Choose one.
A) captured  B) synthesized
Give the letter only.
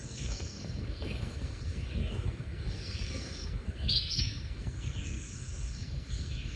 B